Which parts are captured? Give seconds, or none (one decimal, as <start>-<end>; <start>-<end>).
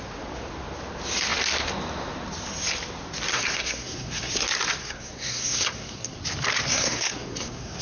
0.0-3.3; 4.3-4.8; 6.2-6.7